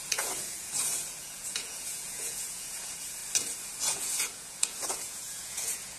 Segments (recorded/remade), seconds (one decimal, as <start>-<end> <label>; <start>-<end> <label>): 0.0-3.2 remade; 3.2-3.8 recorded; 3.8-6.0 remade